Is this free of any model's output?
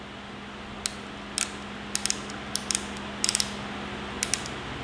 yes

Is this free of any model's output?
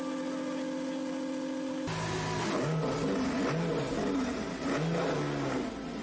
yes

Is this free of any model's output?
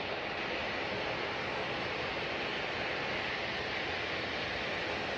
yes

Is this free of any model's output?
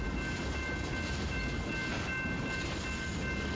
yes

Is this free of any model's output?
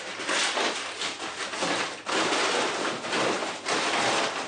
yes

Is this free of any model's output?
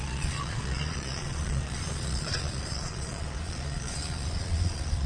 no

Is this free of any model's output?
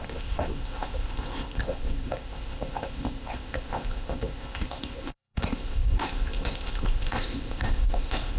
no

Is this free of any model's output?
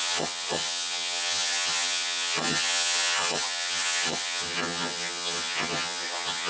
no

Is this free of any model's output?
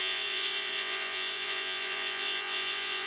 no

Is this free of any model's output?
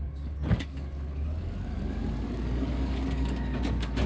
no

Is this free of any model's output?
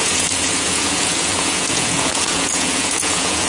no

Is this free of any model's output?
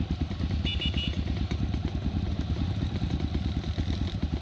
yes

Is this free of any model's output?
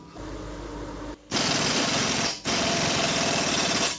yes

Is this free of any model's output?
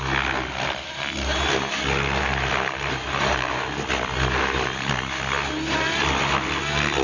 yes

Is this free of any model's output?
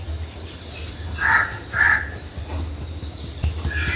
yes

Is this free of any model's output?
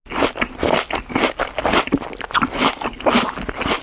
yes